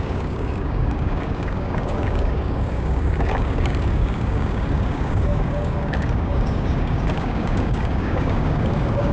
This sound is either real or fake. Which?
fake